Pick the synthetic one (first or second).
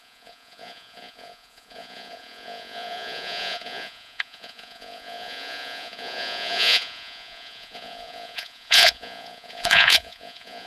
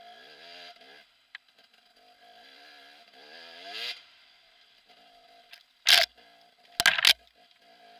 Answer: first